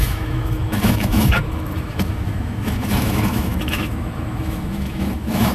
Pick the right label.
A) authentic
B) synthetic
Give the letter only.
B